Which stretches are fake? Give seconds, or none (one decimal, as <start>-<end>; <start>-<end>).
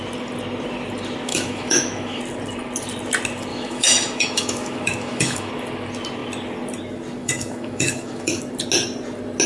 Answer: 1.3-2.2; 3.5-5.5; 7.2-8.4